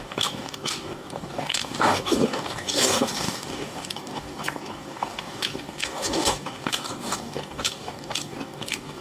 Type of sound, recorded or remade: remade